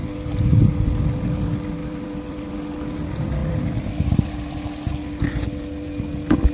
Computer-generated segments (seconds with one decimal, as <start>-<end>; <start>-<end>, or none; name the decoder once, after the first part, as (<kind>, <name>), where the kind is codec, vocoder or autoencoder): 1.8-2.5 (vocoder, BigVGAN v2); 3.4-4.3